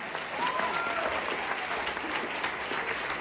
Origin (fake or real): real